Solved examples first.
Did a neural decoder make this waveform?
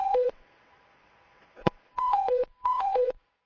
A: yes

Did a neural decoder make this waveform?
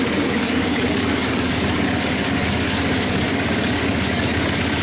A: yes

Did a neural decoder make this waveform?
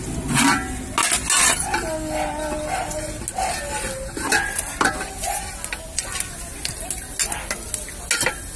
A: no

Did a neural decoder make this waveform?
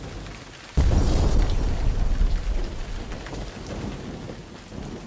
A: no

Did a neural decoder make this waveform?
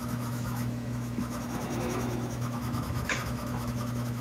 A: yes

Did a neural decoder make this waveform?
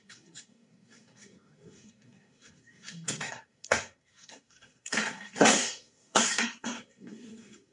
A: yes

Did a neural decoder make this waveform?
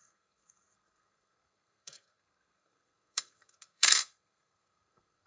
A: yes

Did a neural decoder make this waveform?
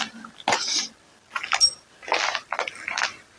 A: no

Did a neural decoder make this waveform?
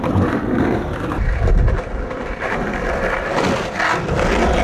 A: no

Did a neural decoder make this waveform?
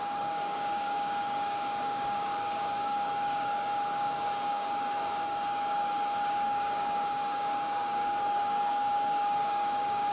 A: yes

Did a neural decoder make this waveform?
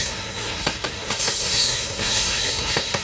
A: yes